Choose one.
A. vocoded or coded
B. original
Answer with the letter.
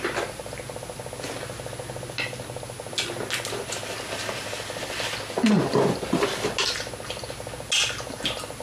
B